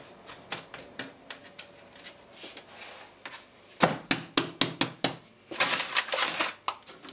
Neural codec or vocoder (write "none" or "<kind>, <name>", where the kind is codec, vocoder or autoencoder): none